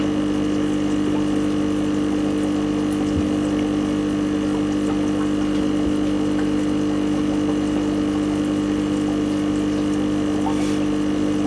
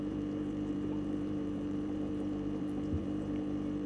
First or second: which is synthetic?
second